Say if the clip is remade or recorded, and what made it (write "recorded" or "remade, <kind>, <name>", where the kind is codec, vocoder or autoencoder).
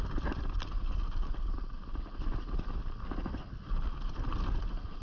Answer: recorded